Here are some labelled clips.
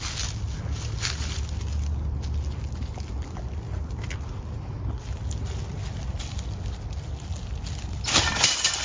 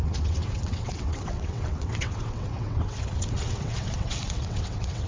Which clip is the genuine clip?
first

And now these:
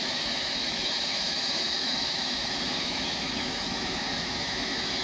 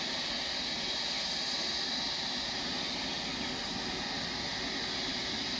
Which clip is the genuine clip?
second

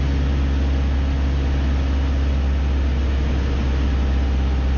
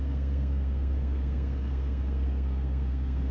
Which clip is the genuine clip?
first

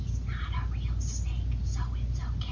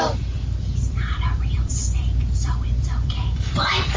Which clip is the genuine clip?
first